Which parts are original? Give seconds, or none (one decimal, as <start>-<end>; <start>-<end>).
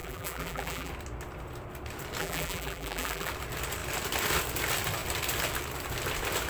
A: 0.9-2.2; 3.3-6.5